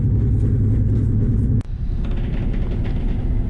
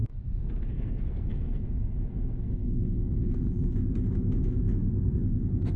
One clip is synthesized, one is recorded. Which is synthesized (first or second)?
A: second